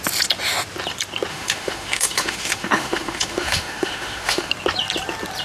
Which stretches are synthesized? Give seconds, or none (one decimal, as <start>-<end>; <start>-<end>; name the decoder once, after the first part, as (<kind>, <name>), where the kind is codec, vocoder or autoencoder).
1.3-4.5 (autoencoder, DAC-VAE)